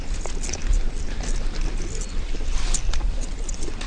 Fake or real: real